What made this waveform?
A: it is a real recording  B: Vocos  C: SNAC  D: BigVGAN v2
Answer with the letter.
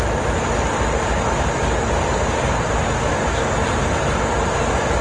A